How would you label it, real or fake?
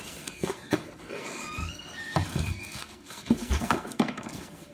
fake